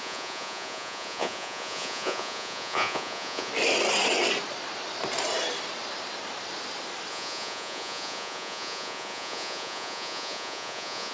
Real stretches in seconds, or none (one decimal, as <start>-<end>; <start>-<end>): 3.5-7.1